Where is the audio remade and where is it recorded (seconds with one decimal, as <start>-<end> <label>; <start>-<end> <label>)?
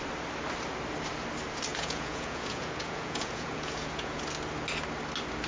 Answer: 0.0-1.7 recorded; 1.7-4.3 remade; 4.3-5.5 recorded